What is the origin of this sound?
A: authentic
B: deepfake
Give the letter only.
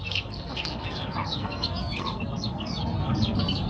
B